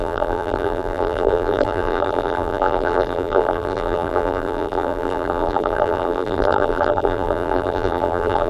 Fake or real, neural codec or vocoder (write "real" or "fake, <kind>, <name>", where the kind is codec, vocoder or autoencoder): fake, vocoder, BigVGAN v2